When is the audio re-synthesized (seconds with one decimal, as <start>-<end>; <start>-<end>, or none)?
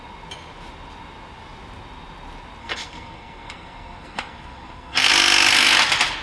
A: 2.6-5.1